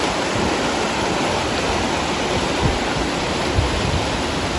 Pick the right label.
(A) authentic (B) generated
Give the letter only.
A